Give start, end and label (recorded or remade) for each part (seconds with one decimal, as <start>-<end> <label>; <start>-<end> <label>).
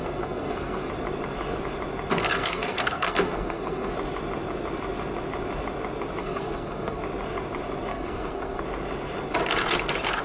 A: 0.0-0.9 remade; 0.9-2.2 recorded; 2.2-3.9 remade; 3.9-6.2 recorded; 6.2-7.0 remade; 7.0-7.9 recorded; 7.9-8.6 remade; 8.6-10.2 recorded